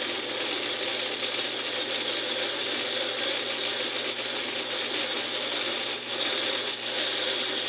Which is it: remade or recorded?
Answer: recorded